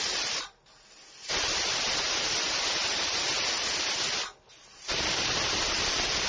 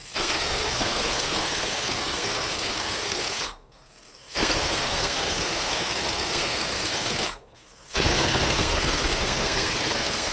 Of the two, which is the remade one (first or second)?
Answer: second